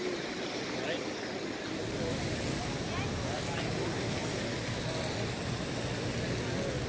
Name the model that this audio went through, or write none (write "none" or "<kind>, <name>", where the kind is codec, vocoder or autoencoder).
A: none